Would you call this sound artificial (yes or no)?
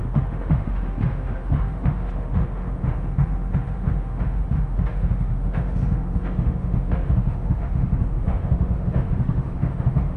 yes